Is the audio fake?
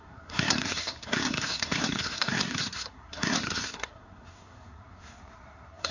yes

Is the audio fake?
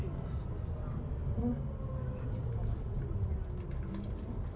no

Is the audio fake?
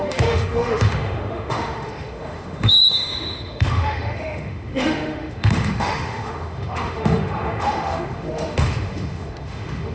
yes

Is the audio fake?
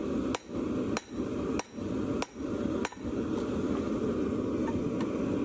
no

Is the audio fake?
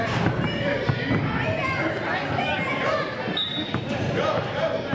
no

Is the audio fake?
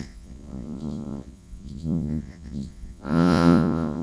yes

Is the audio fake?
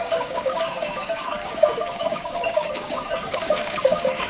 yes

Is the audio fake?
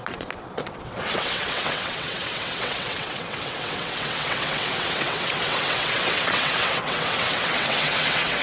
yes